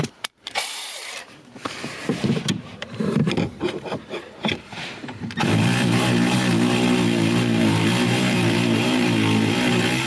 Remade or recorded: remade